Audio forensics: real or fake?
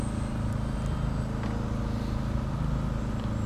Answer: real